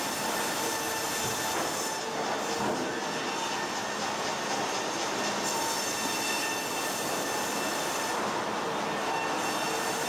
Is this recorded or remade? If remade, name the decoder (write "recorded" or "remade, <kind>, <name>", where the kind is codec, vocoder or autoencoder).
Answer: recorded